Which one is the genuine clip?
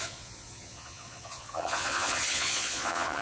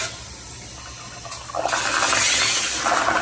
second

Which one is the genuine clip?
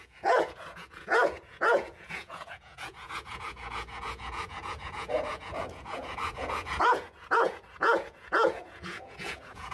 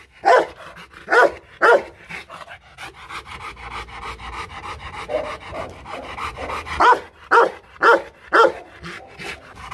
second